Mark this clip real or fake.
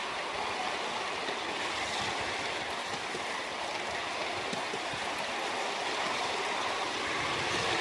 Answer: real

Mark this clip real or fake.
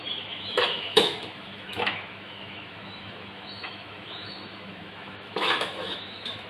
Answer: fake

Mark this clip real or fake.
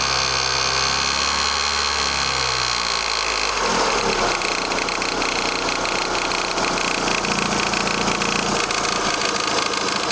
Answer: real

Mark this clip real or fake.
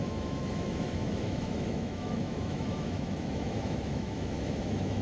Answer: fake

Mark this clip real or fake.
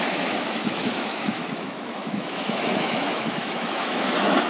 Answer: fake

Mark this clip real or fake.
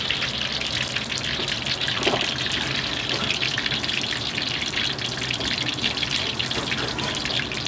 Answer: real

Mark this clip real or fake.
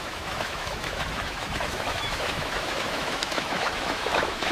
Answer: fake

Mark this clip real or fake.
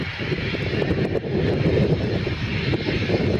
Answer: real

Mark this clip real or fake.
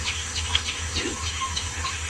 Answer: fake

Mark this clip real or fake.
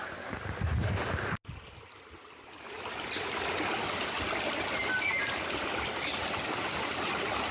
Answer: real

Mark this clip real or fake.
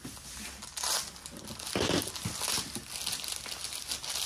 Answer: real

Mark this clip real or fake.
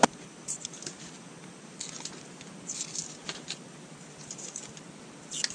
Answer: real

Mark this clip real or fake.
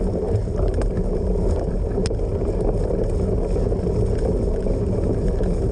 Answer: real